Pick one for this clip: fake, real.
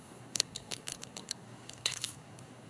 fake